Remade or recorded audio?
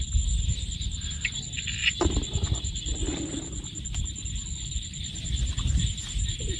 recorded